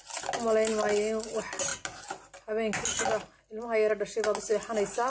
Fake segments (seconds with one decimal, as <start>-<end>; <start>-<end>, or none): none